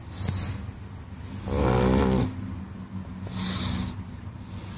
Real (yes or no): yes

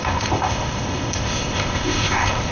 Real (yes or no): no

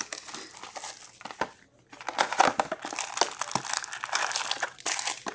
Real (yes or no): yes